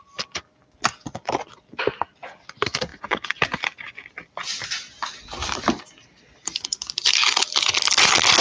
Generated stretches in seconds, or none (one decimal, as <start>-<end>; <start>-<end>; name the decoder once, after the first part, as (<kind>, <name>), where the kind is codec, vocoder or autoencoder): 5.4-7.1 (vocoder, BigVGAN v2)